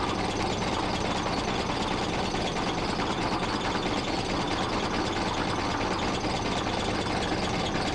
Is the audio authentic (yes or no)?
yes